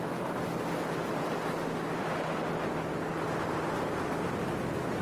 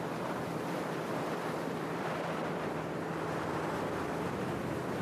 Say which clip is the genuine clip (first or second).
first